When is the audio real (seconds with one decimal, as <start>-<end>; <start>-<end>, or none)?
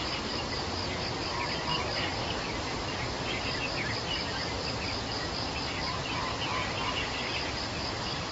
0.0-8.3